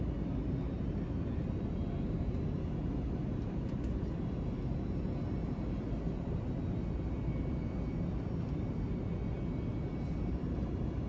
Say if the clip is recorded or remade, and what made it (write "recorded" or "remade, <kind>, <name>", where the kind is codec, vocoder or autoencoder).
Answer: recorded